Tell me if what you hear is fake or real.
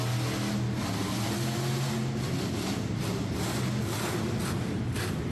real